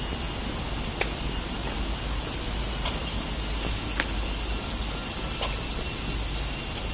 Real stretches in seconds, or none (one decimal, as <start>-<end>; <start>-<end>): 0.0-6.9